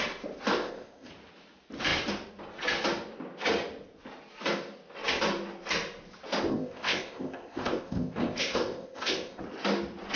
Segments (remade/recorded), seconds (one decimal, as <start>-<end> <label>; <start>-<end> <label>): 0.0-0.5 recorded; 0.5-1.1 remade; 1.1-6.5 recorded; 6.5-9.4 remade; 9.4-10.2 recorded